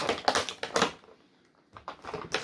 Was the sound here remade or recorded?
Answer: recorded